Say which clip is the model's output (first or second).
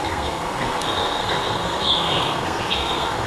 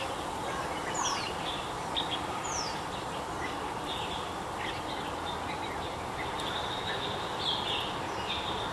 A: first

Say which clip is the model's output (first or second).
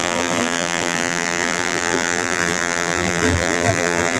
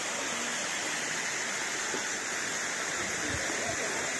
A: first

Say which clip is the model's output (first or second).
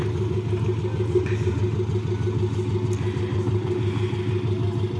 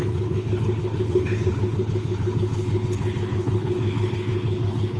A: second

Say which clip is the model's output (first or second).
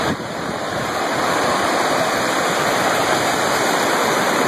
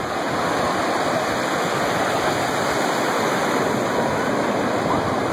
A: first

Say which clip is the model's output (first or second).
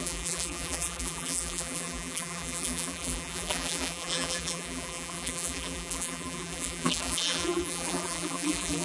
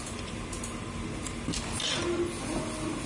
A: first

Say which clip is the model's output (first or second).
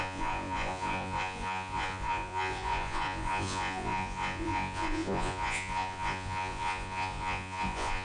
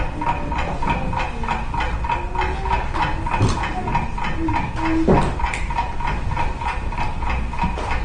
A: first